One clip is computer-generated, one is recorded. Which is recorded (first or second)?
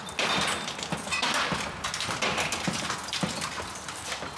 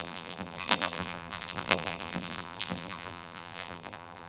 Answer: first